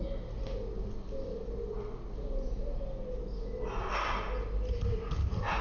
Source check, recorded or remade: recorded